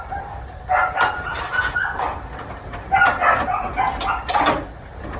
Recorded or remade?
recorded